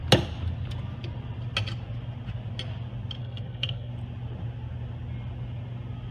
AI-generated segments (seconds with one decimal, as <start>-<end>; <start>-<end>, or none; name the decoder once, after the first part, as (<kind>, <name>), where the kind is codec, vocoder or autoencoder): 3.2-3.9 (codec, SNAC)